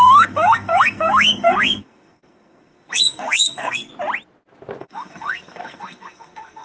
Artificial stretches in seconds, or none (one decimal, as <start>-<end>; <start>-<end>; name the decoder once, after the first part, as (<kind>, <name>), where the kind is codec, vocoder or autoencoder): 0.0-3.9 (codec, SNAC); 4.8-6.6